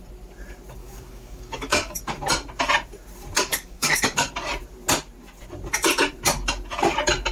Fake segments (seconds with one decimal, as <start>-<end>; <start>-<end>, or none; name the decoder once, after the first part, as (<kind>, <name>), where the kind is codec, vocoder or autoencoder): 0.8-2.0 (codec, DAC); 3.5-4.3